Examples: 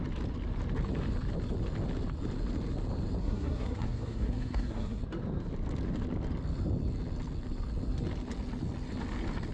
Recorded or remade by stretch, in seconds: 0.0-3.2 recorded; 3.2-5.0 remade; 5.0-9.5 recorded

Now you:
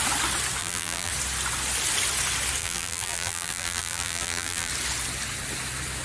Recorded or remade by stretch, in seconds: 0.0-0.6 recorded; 0.6-1.1 remade; 1.1-2.6 recorded; 2.6-4.7 remade; 4.7-6.0 recorded

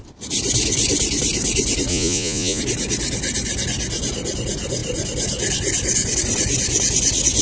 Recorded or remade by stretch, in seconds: 0.0-1.9 recorded; 1.9-2.6 remade; 2.6-7.4 recorded